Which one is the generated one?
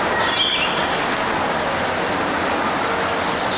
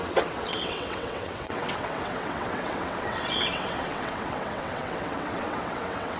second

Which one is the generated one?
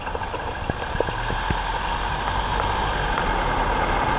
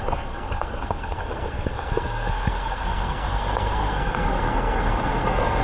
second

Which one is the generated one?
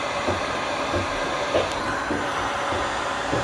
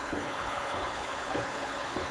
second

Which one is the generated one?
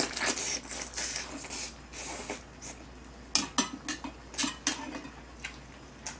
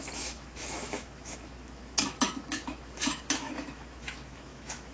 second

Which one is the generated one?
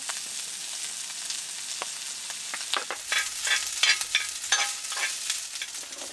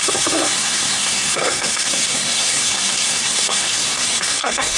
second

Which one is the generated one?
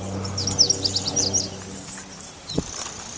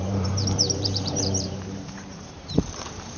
second